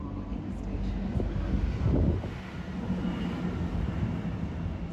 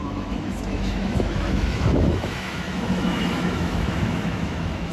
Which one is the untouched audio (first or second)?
first